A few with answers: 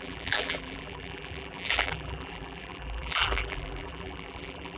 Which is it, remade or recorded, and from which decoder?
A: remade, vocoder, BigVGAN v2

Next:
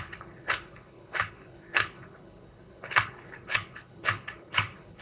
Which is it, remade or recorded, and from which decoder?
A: remade, codec, HILCodec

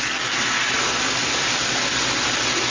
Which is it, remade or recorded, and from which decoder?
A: recorded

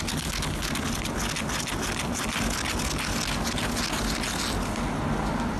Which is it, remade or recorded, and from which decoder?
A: recorded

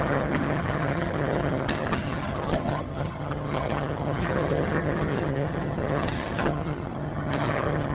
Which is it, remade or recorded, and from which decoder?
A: remade, vocoder, HiFi-GAN